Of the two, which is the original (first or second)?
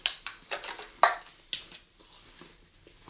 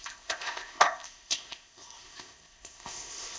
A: first